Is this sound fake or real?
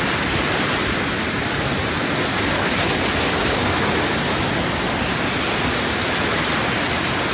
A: real